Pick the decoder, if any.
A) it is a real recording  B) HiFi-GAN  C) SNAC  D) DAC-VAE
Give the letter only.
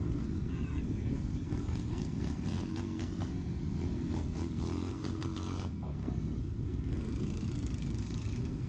C